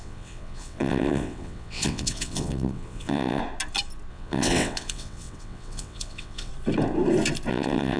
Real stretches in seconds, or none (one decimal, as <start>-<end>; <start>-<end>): 3.4-4.1; 6.5-7.5